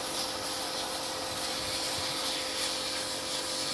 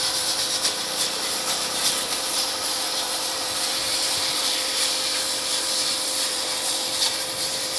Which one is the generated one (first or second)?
second